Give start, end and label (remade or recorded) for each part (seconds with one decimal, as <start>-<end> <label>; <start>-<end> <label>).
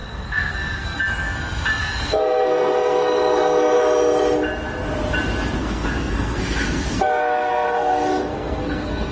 0.0-1.0 remade; 1.0-1.8 recorded; 1.8-3.8 remade; 3.8-5.6 recorded; 5.6-9.1 remade